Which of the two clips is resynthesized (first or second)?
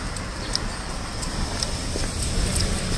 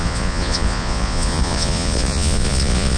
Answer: second